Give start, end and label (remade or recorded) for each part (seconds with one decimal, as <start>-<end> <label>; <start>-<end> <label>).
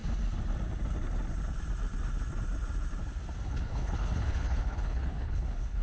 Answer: 0.0-3.5 recorded; 3.5-5.8 remade